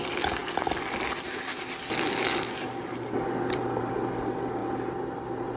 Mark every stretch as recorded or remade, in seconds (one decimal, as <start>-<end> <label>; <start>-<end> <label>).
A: 0.0-5.6 recorded